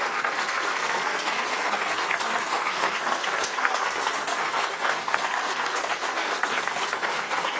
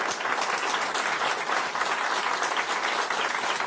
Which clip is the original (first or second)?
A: second